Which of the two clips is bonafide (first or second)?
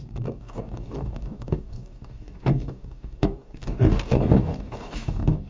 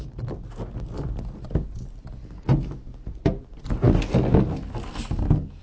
second